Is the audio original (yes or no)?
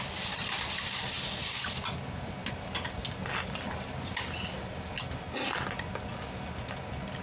yes